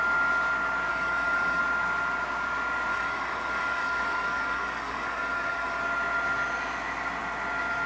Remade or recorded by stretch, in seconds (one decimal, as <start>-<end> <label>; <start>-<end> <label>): 0.0-0.9 recorded; 0.9-1.6 remade; 1.6-2.9 recorded; 2.9-5.8 remade; 5.8-7.9 recorded